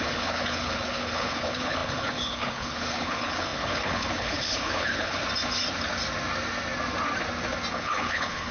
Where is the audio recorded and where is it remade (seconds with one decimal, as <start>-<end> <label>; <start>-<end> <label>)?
0.0-5.2 remade; 5.2-7.7 recorded; 7.7-8.5 remade